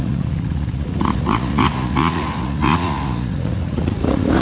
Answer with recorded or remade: remade